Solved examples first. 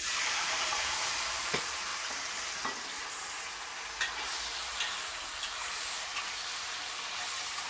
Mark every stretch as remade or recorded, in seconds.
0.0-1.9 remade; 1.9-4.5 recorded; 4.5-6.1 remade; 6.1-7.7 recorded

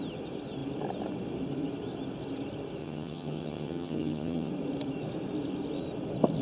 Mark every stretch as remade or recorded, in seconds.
0.0-2.8 recorded; 2.8-4.5 remade; 4.5-6.4 recorded

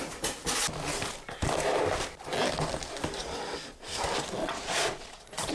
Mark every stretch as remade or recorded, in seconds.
0.0-4.4 recorded; 4.4-5.5 remade